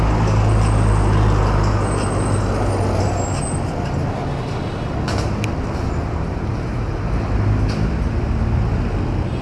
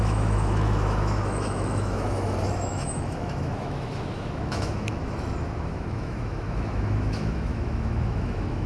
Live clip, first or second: first